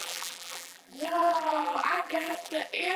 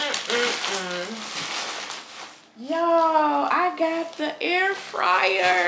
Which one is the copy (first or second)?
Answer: first